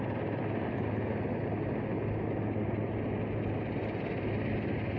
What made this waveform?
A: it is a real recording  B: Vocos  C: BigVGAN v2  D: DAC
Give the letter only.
A